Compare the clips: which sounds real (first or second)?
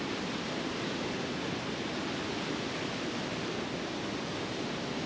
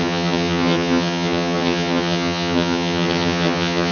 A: first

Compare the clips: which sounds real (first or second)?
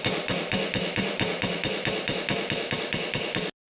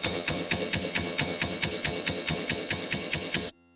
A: first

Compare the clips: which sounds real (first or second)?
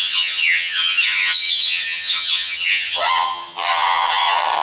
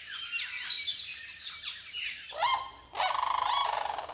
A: second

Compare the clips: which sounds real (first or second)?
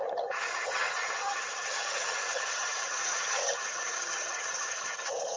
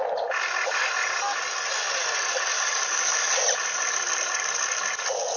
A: second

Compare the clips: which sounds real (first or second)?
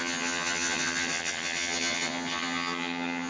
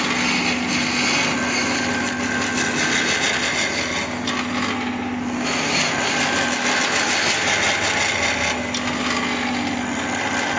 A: second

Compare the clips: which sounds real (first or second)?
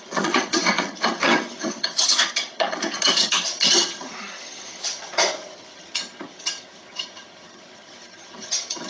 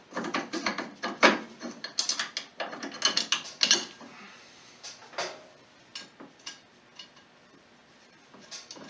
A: second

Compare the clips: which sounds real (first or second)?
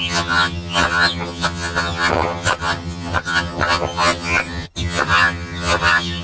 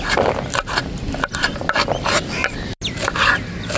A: second